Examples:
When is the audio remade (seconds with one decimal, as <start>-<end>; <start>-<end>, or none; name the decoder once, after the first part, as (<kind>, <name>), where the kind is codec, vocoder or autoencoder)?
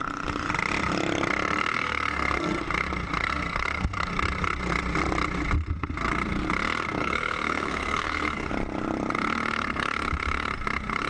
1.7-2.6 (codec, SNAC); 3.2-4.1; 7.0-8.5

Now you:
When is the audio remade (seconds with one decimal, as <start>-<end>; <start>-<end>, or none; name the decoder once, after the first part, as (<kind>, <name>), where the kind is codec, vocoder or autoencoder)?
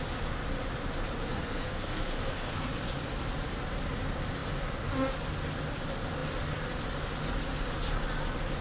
1.3-2.7 (codec, SNAC)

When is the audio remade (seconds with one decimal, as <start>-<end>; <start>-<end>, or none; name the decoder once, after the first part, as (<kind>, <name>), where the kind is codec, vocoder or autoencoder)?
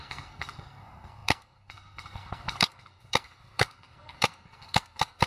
0.0-5.3 (codec, SNAC)